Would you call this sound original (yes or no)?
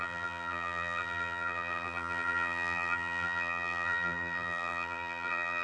no